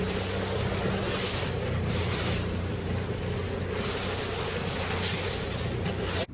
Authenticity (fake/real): real